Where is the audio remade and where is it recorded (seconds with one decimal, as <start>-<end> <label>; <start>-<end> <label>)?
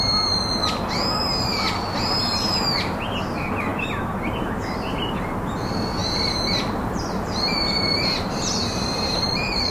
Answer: 0.0-6.0 recorded; 6.0-9.7 remade